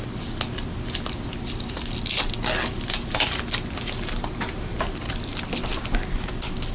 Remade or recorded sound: recorded